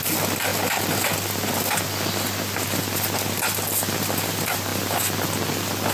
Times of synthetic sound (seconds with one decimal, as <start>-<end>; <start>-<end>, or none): none